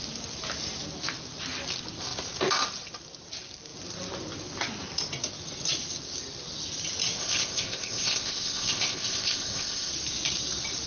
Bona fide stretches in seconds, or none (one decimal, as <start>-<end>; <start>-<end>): 0.0-7.2; 9.9-10.9